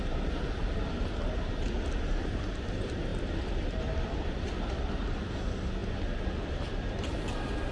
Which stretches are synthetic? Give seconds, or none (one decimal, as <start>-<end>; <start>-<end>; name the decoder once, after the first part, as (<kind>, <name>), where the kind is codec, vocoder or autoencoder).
none